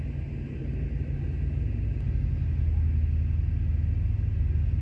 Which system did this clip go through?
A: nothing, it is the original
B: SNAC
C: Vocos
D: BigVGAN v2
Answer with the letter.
A